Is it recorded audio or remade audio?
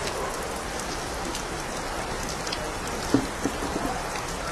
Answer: recorded